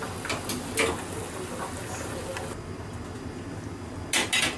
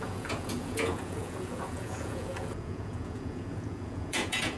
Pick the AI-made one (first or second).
second